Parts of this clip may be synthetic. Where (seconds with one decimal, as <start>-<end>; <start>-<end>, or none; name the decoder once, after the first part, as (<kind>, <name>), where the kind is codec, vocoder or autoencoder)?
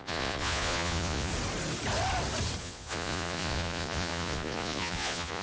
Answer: 0.0-1.3 (vocoder, Vocos); 2.6-5.4